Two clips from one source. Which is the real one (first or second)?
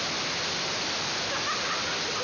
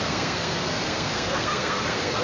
first